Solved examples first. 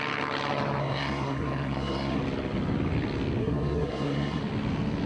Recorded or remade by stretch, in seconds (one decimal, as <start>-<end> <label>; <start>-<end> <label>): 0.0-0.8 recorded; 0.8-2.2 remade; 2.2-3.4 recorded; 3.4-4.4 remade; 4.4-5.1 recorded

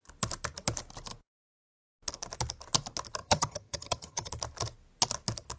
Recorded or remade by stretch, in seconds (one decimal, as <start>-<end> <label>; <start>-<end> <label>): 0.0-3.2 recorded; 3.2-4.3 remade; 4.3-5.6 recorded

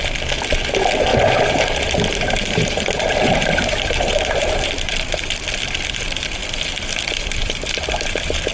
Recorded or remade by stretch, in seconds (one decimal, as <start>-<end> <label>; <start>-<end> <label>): 0.0-1.1 recorded; 1.1-4.7 remade; 4.7-7.4 recorded; 7.4-8.5 remade

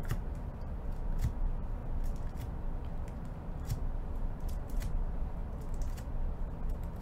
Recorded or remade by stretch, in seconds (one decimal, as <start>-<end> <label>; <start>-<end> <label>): 0.0-1.8 remade; 1.8-4.1 recorded; 4.1-5.4 remade; 5.4-7.0 recorded

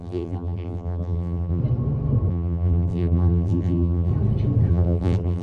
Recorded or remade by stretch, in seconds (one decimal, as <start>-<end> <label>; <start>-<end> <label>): 0.0-1.6 remade; 1.6-2.3 recorded; 2.3-4.1 remade; 4.1-4.7 recorded; 4.7-5.4 remade